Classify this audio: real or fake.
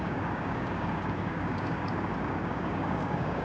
fake